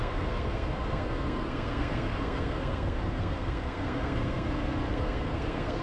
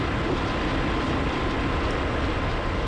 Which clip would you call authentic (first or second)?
second